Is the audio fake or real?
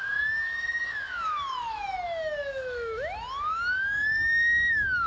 fake